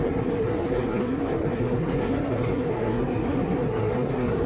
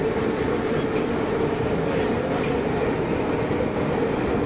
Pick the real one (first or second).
second